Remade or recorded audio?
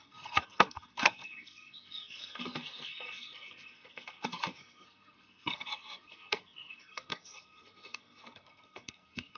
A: remade